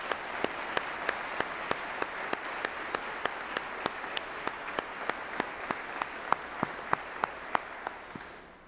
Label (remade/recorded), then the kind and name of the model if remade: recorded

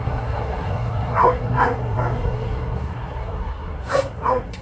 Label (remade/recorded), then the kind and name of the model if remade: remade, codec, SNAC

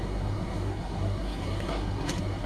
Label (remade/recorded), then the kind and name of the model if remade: remade, codec, SNAC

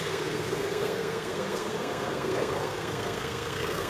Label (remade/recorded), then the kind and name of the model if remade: remade, codec, SNAC